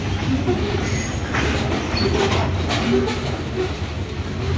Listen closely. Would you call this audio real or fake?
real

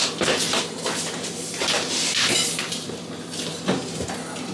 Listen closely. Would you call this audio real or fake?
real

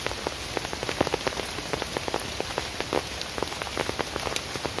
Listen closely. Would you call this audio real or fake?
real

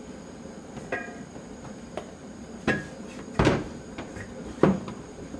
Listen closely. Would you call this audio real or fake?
fake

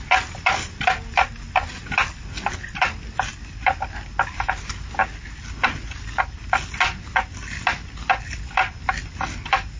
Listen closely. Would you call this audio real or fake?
real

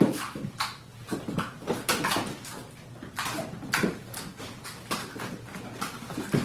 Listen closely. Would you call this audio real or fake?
real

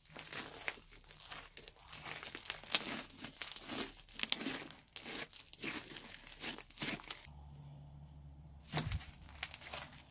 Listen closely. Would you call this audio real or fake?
real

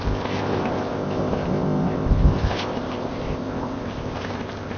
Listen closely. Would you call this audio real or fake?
fake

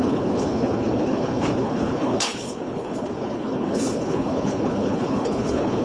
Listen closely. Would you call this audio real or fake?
fake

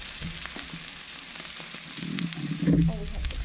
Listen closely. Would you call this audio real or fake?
real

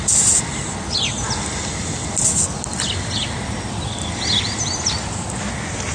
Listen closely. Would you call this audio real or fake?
real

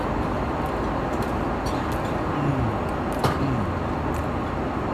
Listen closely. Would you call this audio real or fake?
real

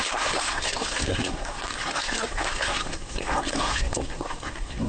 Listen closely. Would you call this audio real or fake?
fake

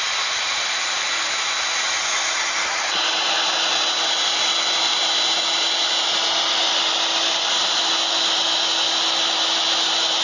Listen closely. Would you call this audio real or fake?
real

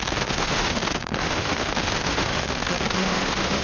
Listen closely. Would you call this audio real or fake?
fake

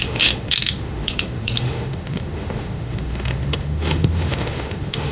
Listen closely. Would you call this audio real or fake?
fake